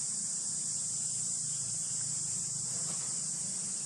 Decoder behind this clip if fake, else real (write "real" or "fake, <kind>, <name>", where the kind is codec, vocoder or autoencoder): fake, vocoder, BigVGAN v2